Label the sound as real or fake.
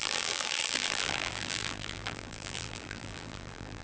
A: fake